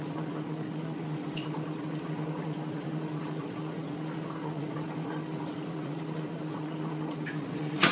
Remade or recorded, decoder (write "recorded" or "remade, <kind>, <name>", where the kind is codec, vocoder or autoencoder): remade, vocoder, Vocos